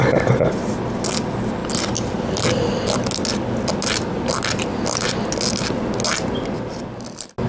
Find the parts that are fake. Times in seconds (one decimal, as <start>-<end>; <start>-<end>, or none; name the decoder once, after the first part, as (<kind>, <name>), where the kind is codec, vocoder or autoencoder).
none